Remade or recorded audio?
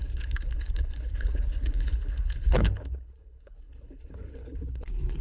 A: remade